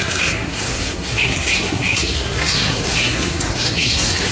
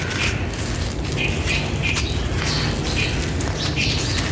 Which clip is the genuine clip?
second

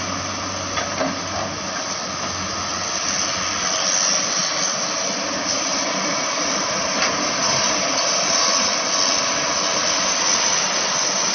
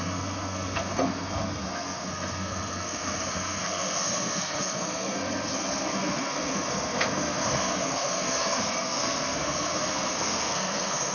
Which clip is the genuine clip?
first